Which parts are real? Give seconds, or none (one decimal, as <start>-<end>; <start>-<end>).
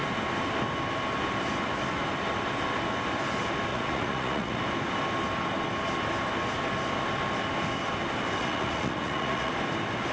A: 0.0-3.7; 4.6-8.4; 9.5-10.1